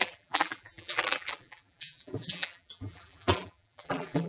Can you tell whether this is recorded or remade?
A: remade